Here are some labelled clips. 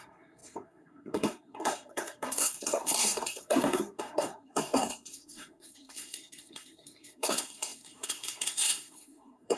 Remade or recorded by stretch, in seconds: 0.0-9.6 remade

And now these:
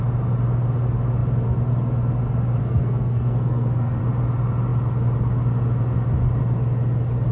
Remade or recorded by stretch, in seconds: 0.0-2.6 recorded; 2.6-4.0 remade; 4.0-7.3 recorded

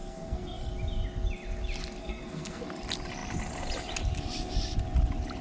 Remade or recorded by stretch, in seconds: 0.0-0.7 remade; 0.7-2.0 recorded; 2.0-2.6 remade; 2.6-5.4 recorded

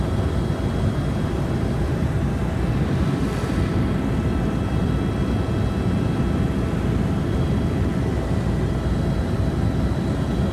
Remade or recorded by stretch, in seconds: 0.0-10.5 recorded

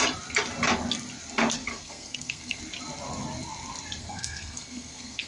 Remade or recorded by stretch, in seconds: 0.0-1.7 recorded; 1.7-2.6 remade; 2.6-4.0 recorded; 4.0-5.3 remade

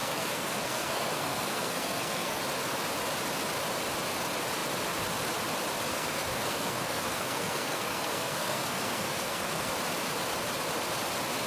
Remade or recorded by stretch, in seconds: 0.0-2.4 remade; 2.4-5.9 recorded; 5.9-9.7 remade; 9.7-11.5 recorded

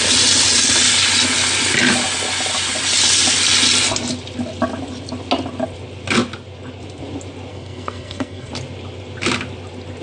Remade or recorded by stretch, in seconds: 0.0-7.5 recorded; 7.5-8.5 remade; 8.5-10.0 recorded

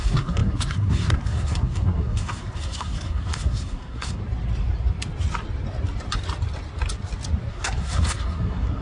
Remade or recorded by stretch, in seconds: 0.0-4.2 remade; 4.2-7.5 recorded; 7.5-8.8 remade